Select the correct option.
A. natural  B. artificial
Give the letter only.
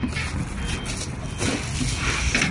A